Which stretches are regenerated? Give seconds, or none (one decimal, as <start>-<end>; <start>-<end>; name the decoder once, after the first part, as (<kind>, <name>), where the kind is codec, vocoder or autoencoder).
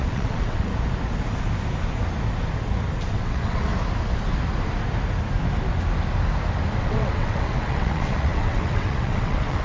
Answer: 0.0-0.7 (vocoder, WaveNeXt); 3.1-3.7; 6.8-9.6